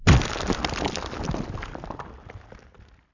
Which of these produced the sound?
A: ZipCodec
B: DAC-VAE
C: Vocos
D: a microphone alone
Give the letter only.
D